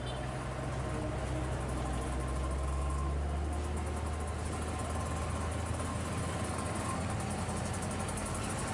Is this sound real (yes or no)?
yes